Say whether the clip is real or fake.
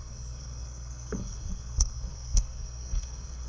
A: fake